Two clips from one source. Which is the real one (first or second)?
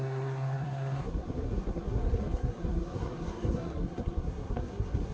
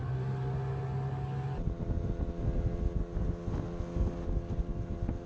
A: second